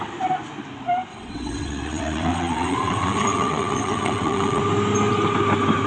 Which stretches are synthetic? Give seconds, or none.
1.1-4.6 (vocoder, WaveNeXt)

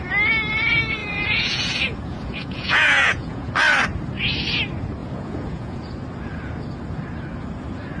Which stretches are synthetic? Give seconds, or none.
1.0-3.5 (vocoder, Vocos); 5.0-5.9

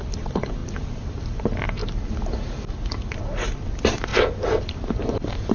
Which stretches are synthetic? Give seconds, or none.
0.0-4.1 (vocoder, BigVGAN v2); 4.6-5.5